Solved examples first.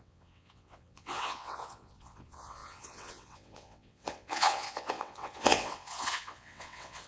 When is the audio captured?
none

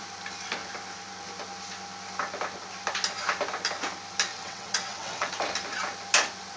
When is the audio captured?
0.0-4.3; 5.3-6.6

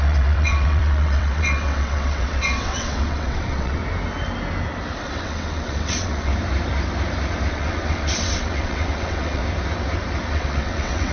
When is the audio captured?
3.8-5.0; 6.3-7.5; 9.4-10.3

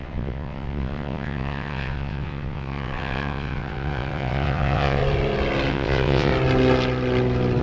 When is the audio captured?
5.0-5.7; 6.3-7.6